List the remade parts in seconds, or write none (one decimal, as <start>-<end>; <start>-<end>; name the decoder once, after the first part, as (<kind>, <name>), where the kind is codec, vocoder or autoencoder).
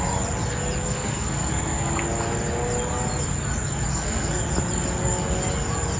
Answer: 0.8-1.9 (codec, SNAC); 3.9-4.4